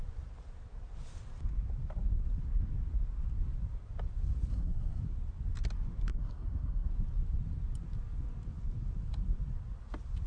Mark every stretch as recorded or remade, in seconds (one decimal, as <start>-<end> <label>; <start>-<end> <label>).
0.0-4.5 recorded; 4.5-5.0 remade; 5.0-6.1 recorded; 6.1-6.9 remade; 6.9-10.3 recorded